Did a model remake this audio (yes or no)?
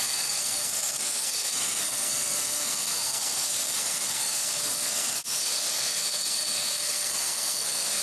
yes